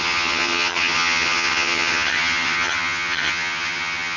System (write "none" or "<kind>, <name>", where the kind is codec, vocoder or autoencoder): vocoder, HiFi-GAN